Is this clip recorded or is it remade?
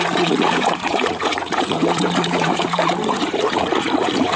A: remade